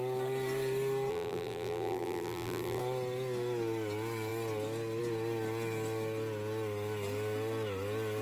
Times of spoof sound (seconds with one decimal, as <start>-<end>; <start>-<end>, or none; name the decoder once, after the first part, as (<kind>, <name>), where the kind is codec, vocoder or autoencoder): 1.1-2.8 (vocoder, BigVGAN v2)